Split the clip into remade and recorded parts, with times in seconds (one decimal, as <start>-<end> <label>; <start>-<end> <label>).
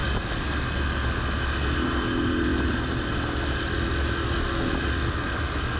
0.0-5.8 recorded